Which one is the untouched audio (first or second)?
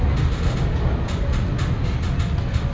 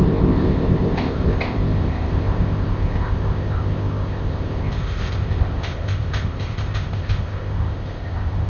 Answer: first